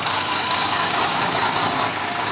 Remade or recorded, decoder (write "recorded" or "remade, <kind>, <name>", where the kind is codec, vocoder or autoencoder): remade, codec, DAC